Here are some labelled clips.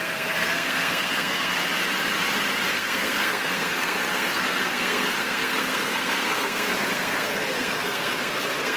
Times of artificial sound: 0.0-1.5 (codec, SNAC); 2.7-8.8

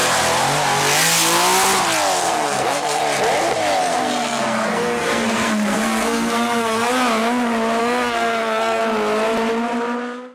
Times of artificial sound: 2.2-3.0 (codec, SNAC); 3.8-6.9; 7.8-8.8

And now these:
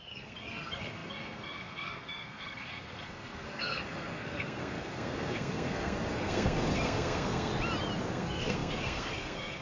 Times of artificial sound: 0.0-7.5 (codec, SNAC); 8.1-9.6

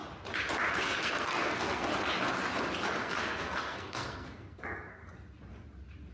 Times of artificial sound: 0.7-1.9 (codec, SNAC); 3.0-5.0

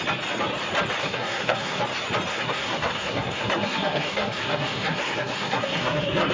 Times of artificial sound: 1.0-1.8 (codec, SNAC); 2.3-6.3

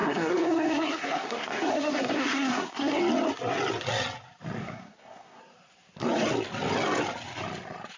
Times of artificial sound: 0.0-3.0 (codec, SNAC); 4.6-5.4

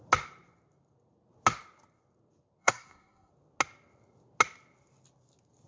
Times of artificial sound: 2.6-3.3 (codec, SNAC)

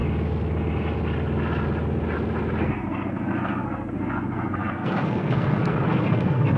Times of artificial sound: 2.6-6.6 (codec, SNAC)